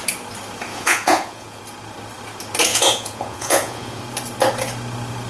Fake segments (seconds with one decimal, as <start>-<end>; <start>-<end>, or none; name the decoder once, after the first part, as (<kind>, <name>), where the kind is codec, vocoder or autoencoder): 0.7-1.6 (vocoder, Vocos); 2.7-4.0